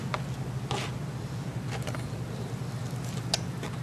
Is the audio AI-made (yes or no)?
no